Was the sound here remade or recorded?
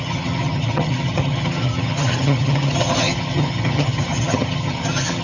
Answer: remade